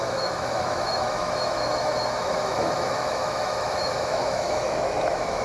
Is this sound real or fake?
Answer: fake